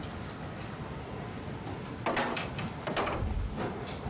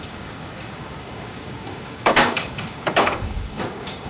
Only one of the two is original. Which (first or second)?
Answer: first